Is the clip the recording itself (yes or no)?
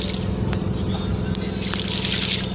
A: yes